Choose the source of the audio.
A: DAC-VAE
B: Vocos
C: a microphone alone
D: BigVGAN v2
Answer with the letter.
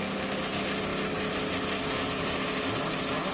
C